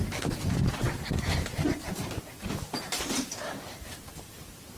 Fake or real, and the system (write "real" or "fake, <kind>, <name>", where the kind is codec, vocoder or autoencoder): fake, vocoder, BigVGAN v2